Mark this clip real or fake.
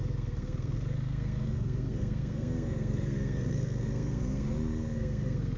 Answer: fake